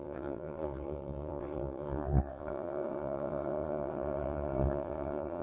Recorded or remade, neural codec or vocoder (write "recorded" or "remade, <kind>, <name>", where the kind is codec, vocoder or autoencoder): remade, vocoder, WaveNeXt